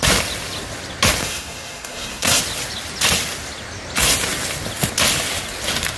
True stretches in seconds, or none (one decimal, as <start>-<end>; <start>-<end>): 0.0-1.2; 2.4-6.0